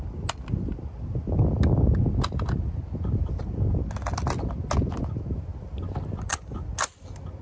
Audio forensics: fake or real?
real